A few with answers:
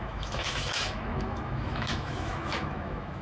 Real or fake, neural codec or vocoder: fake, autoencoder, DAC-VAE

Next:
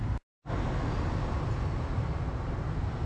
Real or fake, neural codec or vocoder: real